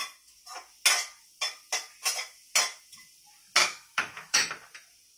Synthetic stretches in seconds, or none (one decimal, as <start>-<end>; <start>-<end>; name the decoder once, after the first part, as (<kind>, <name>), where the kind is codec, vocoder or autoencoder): 3.6-4.5 (autoencoder, DAC-VAE)